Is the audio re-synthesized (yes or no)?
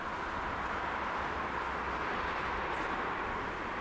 no